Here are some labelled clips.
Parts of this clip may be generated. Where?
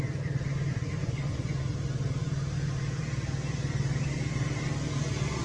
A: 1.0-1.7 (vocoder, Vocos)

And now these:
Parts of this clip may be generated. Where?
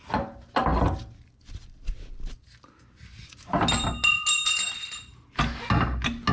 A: none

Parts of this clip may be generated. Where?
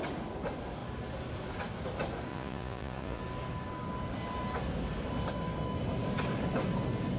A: 2.3-3.2 (vocoder, Vocos)